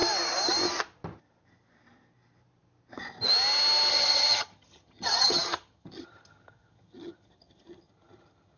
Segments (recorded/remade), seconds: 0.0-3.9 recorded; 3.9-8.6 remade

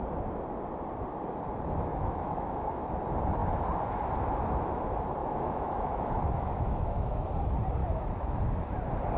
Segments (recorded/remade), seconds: 0.0-1.9 recorded; 1.9-2.9 remade; 2.9-5.2 recorded; 5.2-7.3 remade; 7.3-7.8 recorded; 7.8-8.4 remade; 8.4-9.2 recorded

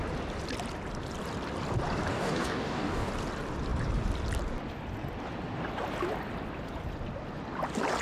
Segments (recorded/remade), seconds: 0.0-2.1 recorded; 2.1-3.1 remade; 3.1-8.0 recorded

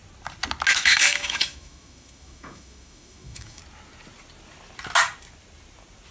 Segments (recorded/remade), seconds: 0.0-0.7 recorded; 0.7-3.6 remade; 3.6-6.1 recorded

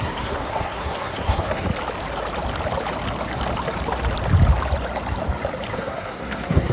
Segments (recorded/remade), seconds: 0.0-1.7 remade; 1.7-5.7 recorded; 5.7-6.7 remade